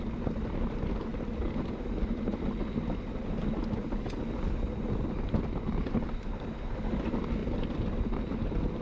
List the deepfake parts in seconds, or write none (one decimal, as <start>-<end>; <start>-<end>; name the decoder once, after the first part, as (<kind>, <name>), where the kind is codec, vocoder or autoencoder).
none